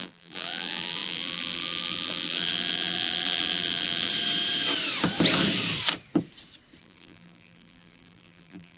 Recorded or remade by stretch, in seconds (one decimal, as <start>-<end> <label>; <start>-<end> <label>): 0.0-4.1 remade; 4.1-6.8 recorded; 6.8-8.8 remade